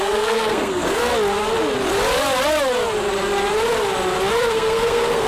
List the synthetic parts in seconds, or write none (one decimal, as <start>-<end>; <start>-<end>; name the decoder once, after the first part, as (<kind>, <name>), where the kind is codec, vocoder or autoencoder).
0.0-1.1 (codec, SNAC); 4.3-5.3